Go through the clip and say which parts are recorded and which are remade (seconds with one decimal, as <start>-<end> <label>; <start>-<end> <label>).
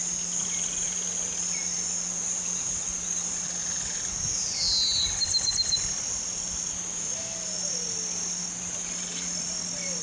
0.0-6.7 recorded; 6.7-7.3 remade; 7.3-10.0 recorded